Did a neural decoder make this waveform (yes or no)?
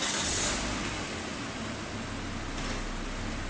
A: no